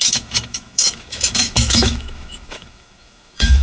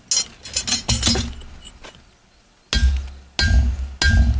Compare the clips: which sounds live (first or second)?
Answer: second